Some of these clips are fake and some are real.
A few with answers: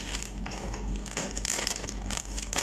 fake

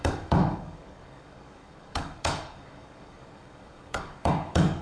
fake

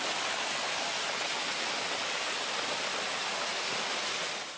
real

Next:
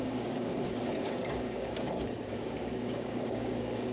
fake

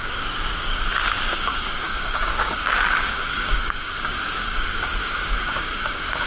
fake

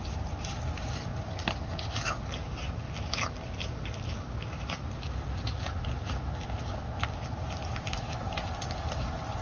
real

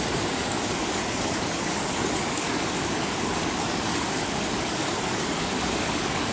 fake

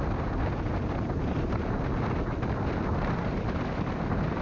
real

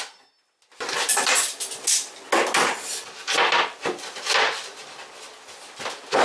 real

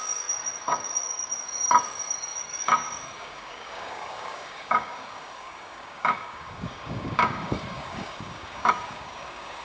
fake